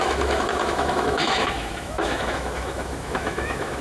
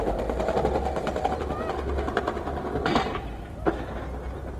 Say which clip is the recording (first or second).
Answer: second